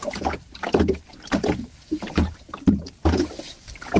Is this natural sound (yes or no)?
no